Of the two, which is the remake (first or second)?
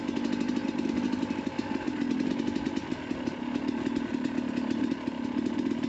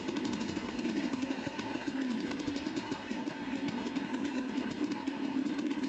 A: second